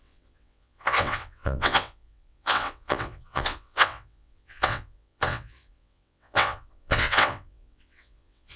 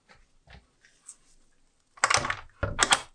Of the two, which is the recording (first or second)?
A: second